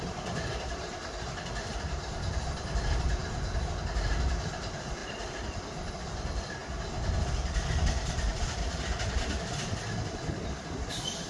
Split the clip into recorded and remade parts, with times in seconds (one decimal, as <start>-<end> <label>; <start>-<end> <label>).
0.0-6.6 remade; 6.6-7.2 recorded; 7.2-8.6 remade; 8.6-10.9 recorded; 10.9-11.3 remade

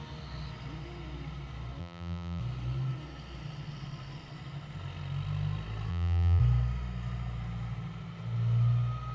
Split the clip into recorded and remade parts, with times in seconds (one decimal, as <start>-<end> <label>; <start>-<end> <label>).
0.0-1.8 recorded; 1.8-2.4 remade; 2.4-5.9 recorded; 5.9-6.4 remade; 6.4-9.1 recorded

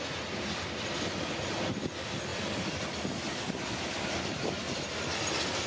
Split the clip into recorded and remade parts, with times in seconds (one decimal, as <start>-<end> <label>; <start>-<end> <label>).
0.0-5.7 recorded

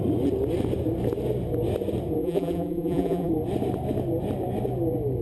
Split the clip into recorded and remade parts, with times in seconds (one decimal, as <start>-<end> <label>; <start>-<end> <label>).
0.0-2.2 recorded; 2.2-3.3 remade; 3.3-5.2 recorded

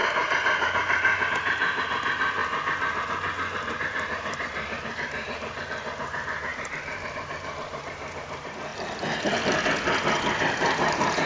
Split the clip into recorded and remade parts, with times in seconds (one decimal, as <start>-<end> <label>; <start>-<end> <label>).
0.0-2.4 remade; 2.4-3.8 recorded; 3.8-8.7 remade; 8.7-10.3 recorded; 10.3-11.3 remade

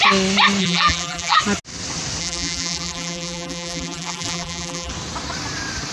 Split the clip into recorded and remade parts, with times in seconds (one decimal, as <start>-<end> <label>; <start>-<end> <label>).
0.0-0.6 recorded; 0.6-1.4 remade; 1.4-2.2 recorded; 2.2-4.9 remade; 4.9-5.9 recorded